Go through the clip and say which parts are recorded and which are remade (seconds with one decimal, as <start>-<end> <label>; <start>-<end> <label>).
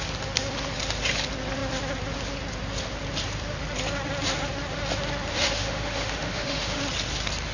0.0-5.3 recorded; 5.3-6.8 remade; 6.8-7.5 recorded